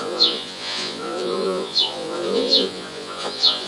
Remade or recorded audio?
remade